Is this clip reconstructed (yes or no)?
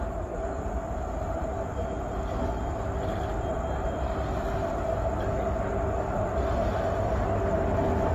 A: no